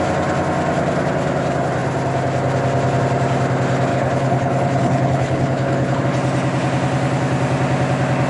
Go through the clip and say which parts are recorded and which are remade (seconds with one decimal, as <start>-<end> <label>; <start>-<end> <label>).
0.0-3.9 recorded; 3.9-6.0 remade; 6.0-8.3 recorded